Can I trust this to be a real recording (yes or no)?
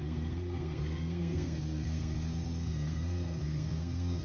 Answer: no